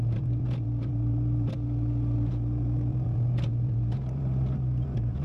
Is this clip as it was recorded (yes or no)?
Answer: no